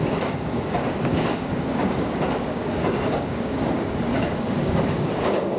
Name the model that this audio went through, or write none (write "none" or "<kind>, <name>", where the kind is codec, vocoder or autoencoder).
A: codec, DAC